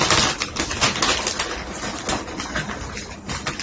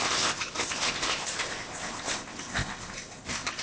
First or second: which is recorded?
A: first